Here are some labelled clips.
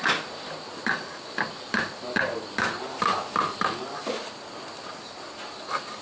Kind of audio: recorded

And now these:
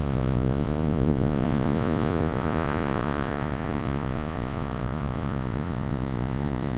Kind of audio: remade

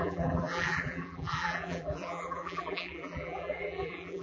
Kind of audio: remade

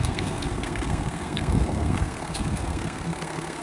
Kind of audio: remade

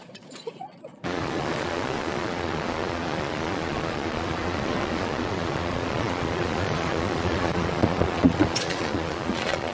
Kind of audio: remade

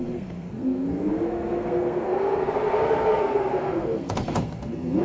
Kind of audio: remade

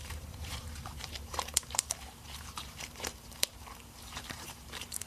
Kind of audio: remade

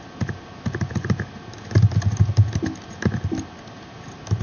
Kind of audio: recorded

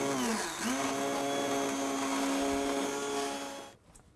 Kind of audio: recorded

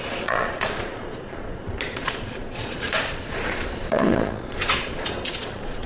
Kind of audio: remade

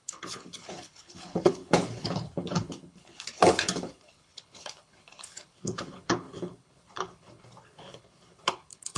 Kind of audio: remade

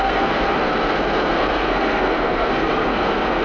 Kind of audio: remade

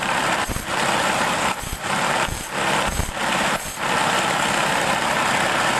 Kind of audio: remade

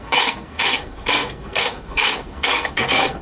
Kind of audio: remade